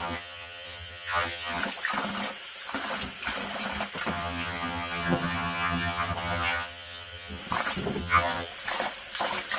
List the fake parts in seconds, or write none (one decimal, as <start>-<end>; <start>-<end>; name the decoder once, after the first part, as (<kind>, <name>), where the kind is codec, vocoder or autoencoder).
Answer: 0.0-1.6 (vocoder, HiFi-GAN); 4.1-7.4; 8.0-8.5